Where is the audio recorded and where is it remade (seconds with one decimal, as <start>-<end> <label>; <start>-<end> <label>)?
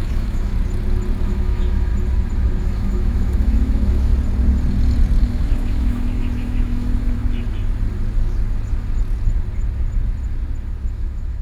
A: 0.0-0.5 remade; 0.5-1.2 recorded; 1.2-1.9 remade; 1.9-2.6 recorded; 2.6-4.1 remade; 4.1-5.2 recorded; 5.2-7.2 remade; 7.2-10.9 recorded; 10.9-11.4 remade